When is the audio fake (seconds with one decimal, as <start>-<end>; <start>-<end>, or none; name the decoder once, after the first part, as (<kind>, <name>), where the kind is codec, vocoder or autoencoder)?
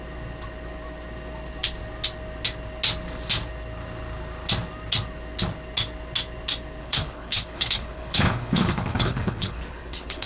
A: 6.8-10.3 (codec, HILCodec)